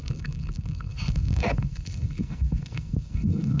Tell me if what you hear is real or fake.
fake